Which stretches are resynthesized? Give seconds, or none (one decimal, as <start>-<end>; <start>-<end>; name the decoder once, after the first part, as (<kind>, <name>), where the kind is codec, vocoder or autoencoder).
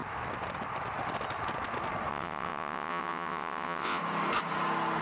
2.1-4.0 (vocoder, WaveNeXt)